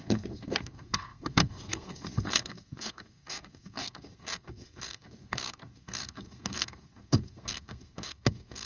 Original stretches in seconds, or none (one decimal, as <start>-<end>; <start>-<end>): none